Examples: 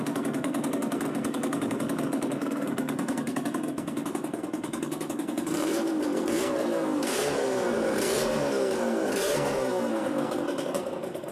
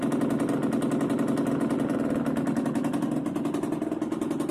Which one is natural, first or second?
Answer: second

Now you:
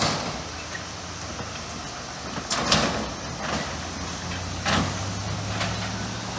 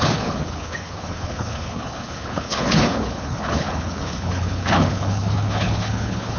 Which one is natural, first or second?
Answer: first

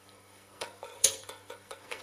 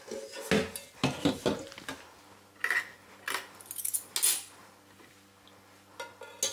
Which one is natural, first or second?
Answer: second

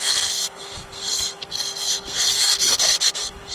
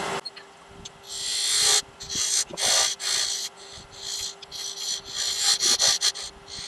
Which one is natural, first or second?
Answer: second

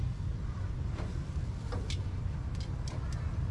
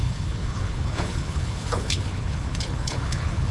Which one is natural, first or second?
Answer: first